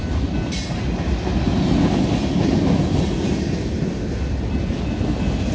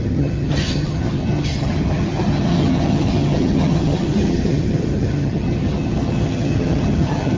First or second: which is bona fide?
first